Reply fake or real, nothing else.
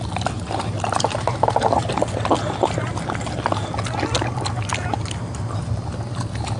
real